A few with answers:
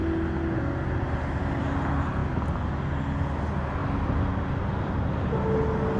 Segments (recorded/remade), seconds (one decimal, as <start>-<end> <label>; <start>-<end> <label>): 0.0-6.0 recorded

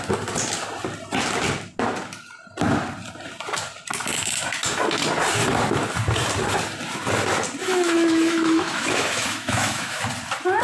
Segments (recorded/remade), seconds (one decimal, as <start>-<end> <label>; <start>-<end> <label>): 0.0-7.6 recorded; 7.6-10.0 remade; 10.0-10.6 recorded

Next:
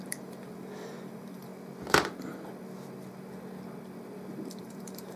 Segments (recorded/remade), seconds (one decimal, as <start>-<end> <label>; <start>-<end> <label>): 0.0-1.5 remade; 1.5-4.6 recorded; 4.6-5.2 remade

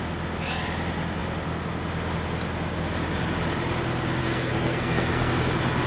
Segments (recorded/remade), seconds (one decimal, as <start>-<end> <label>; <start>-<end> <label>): 0.0-4.2 recorded; 4.2-5.3 remade; 5.3-5.9 recorded

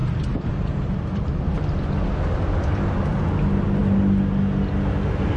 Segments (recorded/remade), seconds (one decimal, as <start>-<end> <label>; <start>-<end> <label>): 0.0-1.3 remade; 1.3-5.4 recorded